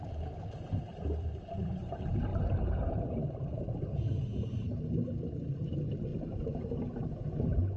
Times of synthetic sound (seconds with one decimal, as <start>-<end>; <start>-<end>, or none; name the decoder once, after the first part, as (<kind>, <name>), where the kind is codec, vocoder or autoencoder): 0.0-7.8 (vocoder, BigVGAN v2)